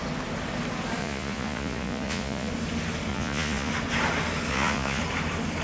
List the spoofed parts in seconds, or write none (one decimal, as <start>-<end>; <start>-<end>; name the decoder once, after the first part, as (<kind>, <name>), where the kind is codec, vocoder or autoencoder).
1.0-2.5 (vocoder, Vocos); 3.1-3.7; 4.5-5.0